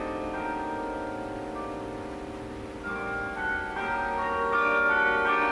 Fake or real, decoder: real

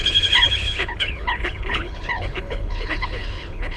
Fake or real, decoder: fake, codec, HILCodec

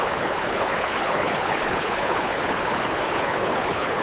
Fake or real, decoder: fake, codec, HILCodec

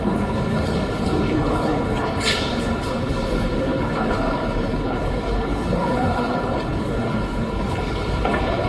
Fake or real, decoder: fake, codec, HILCodec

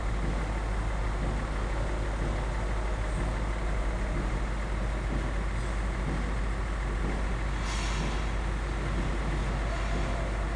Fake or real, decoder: real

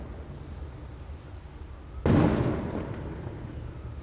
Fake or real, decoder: real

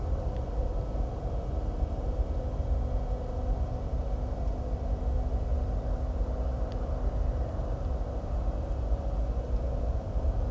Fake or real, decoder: real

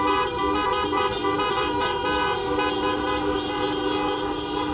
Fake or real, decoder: real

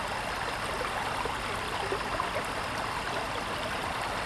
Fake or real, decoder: real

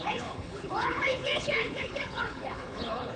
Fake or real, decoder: fake, codec, HILCodec